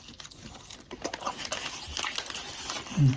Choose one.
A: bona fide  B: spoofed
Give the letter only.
A